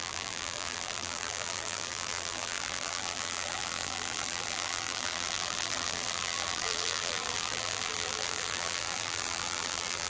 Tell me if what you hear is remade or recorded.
remade